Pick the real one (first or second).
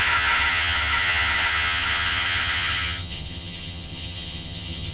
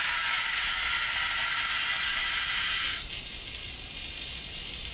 second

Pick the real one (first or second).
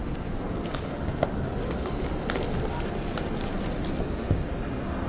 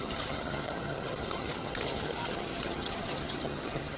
first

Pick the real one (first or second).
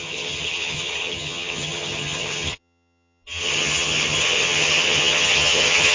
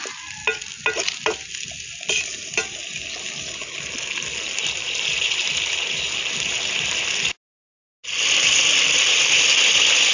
second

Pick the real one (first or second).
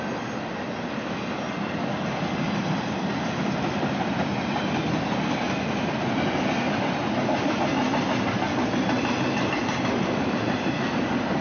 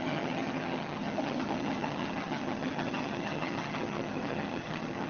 first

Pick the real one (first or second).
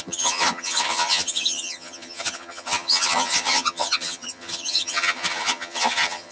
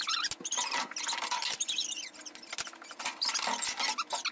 second